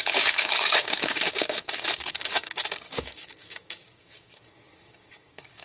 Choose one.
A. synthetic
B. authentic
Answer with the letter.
A